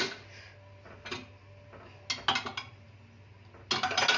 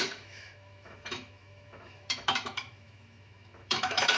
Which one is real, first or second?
first